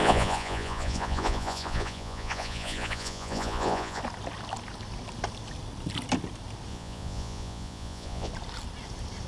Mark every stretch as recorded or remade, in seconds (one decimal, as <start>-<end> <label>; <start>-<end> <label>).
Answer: 0.0-4.0 remade; 4.0-6.7 recorded; 6.7-8.3 remade; 8.3-9.3 recorded